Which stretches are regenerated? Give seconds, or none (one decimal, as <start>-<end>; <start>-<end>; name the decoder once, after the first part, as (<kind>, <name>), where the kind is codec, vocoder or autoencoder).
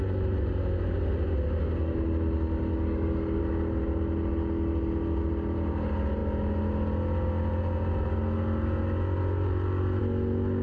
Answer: 2.7-3.4 (codec, DAC)